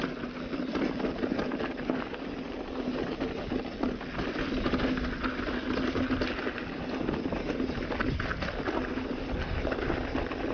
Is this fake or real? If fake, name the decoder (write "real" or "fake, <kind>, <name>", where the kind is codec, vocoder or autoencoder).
real